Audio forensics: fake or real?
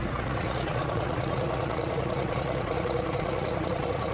fake